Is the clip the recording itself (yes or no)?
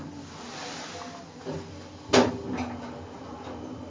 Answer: yes